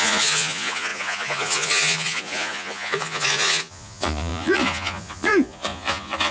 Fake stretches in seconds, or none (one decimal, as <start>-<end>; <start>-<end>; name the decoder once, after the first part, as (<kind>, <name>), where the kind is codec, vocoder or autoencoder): 0.0-6.3 (vocoder, Vocos)